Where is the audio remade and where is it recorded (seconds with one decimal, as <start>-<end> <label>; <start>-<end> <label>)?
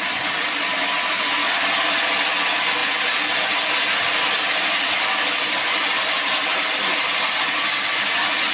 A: 0.0-8.5 recorded